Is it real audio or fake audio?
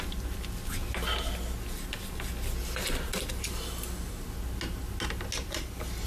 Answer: real